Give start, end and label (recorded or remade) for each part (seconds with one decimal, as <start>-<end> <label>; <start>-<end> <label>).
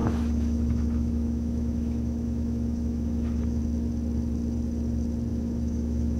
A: 0.0-3.6 remade; 3.6-5.3 recorded; 5.3-6.2 remade